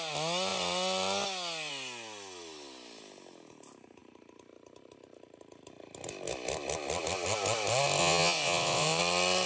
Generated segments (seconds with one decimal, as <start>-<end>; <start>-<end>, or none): 8.0-9.0